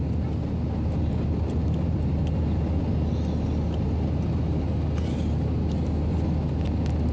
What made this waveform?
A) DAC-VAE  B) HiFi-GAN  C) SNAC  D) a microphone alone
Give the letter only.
D